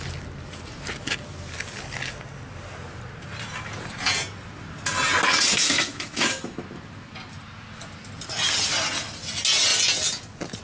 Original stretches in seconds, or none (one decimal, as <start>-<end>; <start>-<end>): 0.0-5.6; 6.7-10.6